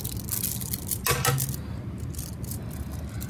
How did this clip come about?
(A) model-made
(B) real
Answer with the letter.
B